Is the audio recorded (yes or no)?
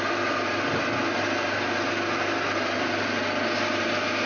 yes